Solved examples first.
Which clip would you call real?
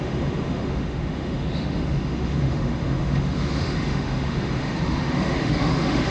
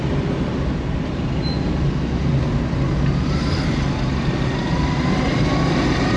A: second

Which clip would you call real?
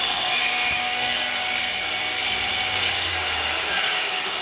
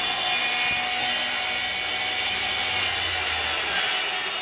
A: second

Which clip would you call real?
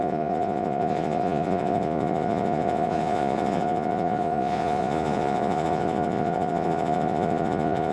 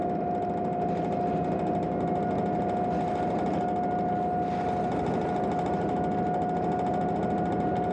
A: second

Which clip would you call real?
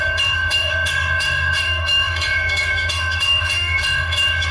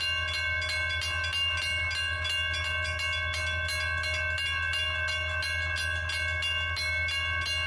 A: second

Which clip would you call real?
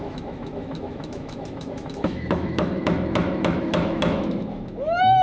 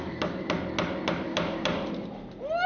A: second